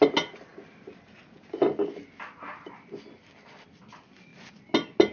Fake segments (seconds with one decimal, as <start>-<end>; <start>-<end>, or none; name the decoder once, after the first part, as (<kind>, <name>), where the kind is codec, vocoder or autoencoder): none